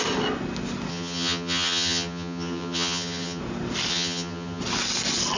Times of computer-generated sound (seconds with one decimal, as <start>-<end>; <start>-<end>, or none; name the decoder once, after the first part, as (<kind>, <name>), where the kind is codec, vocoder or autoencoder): 0.9-3.4 (vocoder, HiFi-GAN); 3.9-4.6